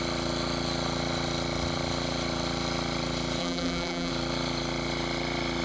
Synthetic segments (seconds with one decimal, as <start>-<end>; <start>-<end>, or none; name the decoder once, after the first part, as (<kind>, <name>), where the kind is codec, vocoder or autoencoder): 3.4-4.1 (vocoder, BigVGAN v2)

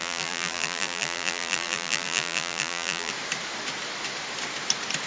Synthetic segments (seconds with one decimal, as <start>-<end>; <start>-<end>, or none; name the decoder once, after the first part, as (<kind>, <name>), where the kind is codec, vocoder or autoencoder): 0.0-3.1 (vocoder, BigVGAN v2)

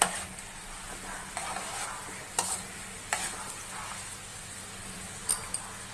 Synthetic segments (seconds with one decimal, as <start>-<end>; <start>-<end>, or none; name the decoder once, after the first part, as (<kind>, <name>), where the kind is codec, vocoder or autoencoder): 4.3-5.5 (vocoder, BigVGAN v2)

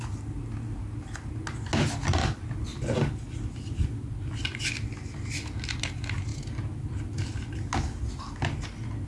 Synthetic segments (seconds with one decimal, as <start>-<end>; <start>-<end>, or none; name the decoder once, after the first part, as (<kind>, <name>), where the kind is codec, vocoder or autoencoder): none

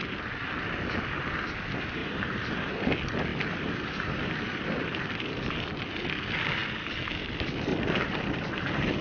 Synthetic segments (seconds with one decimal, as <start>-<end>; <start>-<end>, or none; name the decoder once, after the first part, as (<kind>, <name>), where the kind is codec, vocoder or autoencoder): 2.0-2.7 (vocoder, BigVGAN v2); 3.3-6.1; 7.7-9.0